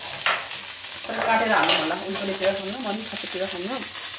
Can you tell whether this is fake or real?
real